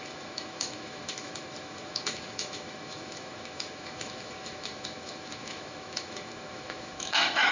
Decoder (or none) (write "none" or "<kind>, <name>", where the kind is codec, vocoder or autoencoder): autoencoder, DAC-VAE